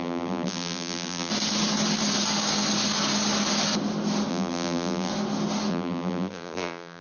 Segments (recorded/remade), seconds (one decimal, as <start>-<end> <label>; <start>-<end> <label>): 0.0-1.3 remade; 1.3-4.3 recorded; 4.3-5.1 remade; 5.1-5.7 recorded; 5.7-7.0 remade